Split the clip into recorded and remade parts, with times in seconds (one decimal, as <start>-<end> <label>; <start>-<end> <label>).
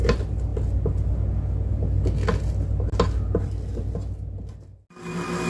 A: 0.0-5.5 recorded